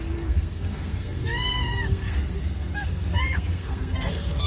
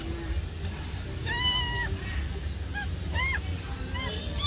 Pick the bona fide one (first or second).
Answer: second